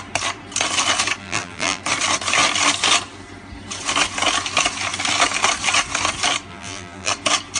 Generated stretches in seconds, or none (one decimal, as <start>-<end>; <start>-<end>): 1.2-1.8; 6.5-7.1